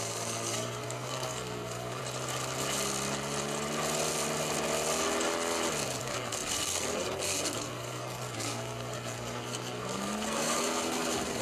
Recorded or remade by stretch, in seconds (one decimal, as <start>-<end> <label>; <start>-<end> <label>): 0.0-2.0 remade; 2.0-6.0 recorded; 6.0-11.4 remade

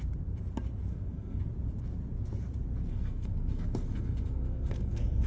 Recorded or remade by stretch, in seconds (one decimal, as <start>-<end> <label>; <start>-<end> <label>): 0.0-0.9 recorded; 0.9-1.4 remade; 1.4-2.9 recorded; 2.9-5.3 remade